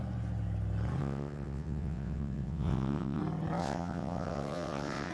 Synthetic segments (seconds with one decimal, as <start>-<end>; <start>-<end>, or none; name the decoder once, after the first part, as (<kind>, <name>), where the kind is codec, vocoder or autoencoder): 1.0-3.2 (vocoder, WaveNeXt); 3.6-5.1